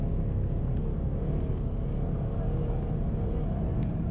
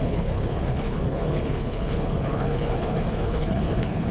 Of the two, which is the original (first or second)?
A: first